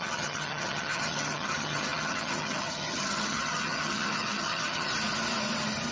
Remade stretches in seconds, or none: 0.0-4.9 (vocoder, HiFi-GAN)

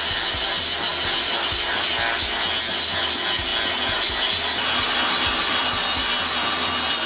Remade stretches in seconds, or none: none